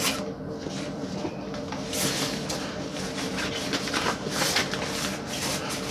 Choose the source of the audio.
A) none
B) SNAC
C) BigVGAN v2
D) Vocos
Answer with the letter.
A